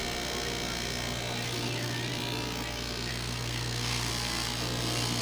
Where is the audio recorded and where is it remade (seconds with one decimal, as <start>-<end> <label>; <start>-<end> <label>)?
0.0-3.1 recorded; 3.1-4.1 remade; 4.1-5.2 recorded